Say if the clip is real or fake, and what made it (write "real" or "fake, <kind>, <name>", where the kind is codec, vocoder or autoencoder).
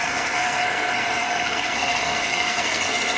fake, codec, SNAC